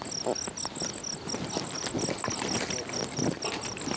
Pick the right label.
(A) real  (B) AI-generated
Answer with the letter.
A